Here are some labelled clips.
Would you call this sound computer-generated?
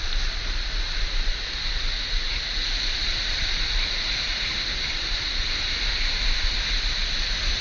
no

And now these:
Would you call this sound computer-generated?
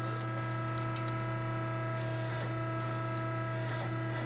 no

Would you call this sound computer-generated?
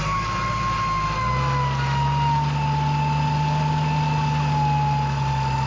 no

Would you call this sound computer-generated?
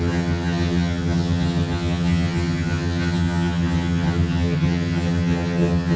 yes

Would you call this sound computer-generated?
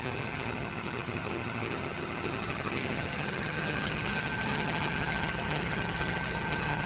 yes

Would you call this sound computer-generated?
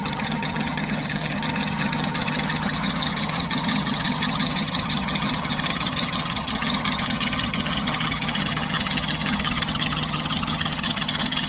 yes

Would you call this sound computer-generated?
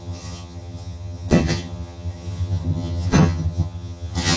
yes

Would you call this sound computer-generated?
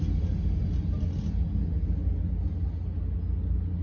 no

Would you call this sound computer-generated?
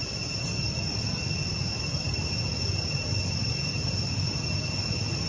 no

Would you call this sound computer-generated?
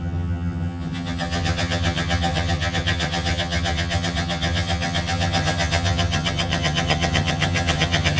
yes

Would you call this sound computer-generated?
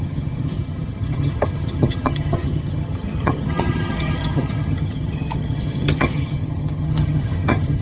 yes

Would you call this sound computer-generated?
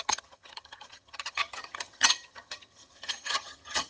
yes